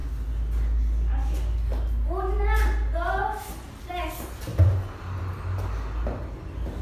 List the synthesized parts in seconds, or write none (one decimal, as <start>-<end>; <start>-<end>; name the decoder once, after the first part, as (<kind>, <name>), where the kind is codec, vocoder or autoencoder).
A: none